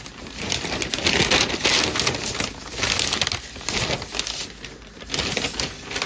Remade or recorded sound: recorded